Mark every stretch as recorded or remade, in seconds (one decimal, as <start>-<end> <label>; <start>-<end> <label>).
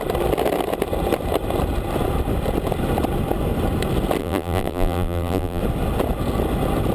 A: 0.0-4.2 recorded; 4.2-5.6 remade; 5.6-6.9 recorded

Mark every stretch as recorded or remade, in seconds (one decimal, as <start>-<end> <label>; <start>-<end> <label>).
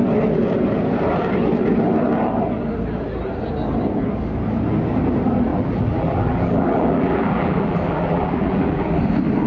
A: 0.0-5.5 recorded; 5.5-9.0 remade; 9.0-9.5 recorded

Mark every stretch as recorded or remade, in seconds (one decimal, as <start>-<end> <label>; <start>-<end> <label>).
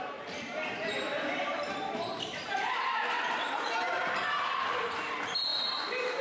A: 0.0-5.5 remade; 5.5-6.2 recorded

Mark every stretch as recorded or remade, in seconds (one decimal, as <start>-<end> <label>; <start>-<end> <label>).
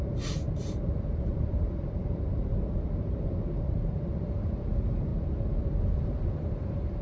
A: 0.0-2.5 remade; 2.5-3.6 recorded; 3.6-5.1 remade; 5.1-6.1 recorded; 6.1-7.0 remade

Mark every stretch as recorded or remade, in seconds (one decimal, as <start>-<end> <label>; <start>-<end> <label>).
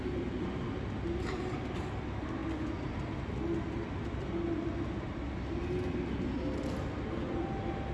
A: 0.0-7.9 recorded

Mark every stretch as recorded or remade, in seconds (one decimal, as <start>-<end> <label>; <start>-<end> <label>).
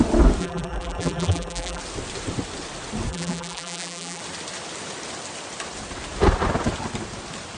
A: 0.0-0.4 recorded; 0.4-1.8 remade; 1.8-3.1 recorded; 3.1-4.2 remade; 4.2-7.6 recorded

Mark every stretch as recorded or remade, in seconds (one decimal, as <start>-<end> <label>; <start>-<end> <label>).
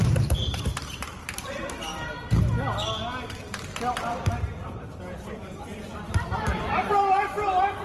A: 0.0-1.9 remade; 1.9-4.0 recorded; 4.0-7.8 remade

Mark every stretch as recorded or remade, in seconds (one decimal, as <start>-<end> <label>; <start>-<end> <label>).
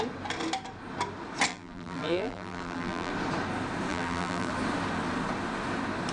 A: 0.0-1.5 recorded; 1.5-3.1 remade; 3.1-3.9 recorded; 3.9-4.5 remade; 4.5-6.1 recorded